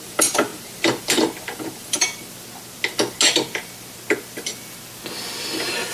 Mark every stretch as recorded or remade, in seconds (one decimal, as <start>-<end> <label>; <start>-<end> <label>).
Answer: 0.0-2.1 remade; 2.1-5.4 recorded; 5.4-5.9 remade